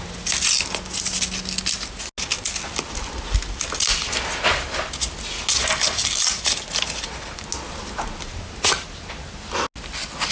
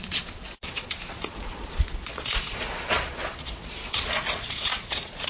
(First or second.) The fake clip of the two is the second